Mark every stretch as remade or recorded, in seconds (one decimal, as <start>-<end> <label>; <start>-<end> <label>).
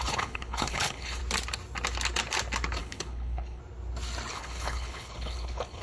0.0-1.2 remade; 1.2-2.8 recorded; 2.8-3.6 remade; 3.6-4.3 recorded; 4.3-5.8 remade